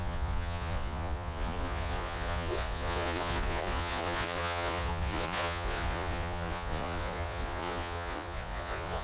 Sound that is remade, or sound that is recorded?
remade